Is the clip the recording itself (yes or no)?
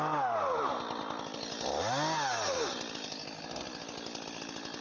yes